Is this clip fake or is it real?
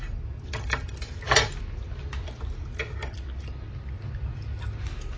real